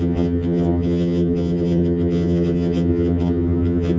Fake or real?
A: fake